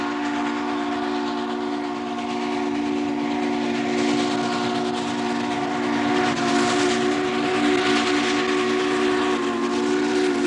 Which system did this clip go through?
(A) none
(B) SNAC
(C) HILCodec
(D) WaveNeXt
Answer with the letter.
A